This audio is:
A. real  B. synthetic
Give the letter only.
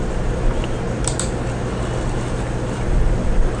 A